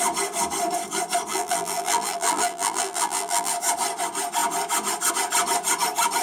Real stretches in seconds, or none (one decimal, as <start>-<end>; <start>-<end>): 0.0-1.3; 3.5-6.2